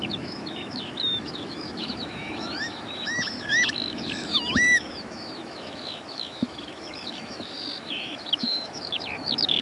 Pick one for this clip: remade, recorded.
remade